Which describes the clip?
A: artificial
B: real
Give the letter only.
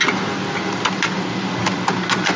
B